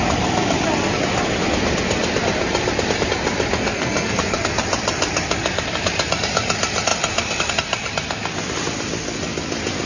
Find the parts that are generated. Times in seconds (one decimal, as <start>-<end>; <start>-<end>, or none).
3.7-4.5